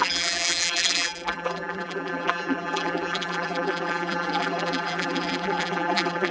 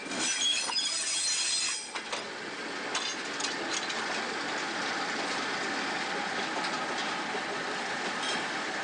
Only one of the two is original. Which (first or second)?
second